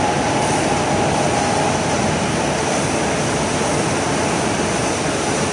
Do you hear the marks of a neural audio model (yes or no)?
no